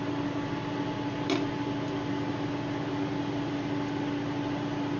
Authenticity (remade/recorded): recorded